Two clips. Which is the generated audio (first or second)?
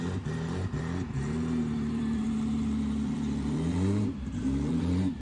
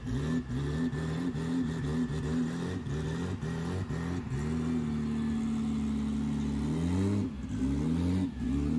first